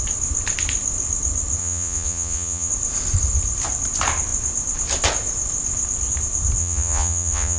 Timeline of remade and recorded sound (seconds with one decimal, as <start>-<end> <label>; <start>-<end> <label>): 0.0-1.6 recorded; 1.6-2.7 remade; 2.7-6.6 recorded; 6.6-7.6 remade